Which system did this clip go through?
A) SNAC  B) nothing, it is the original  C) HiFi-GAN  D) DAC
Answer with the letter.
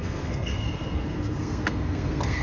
A